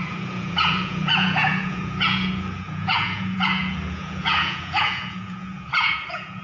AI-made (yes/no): yes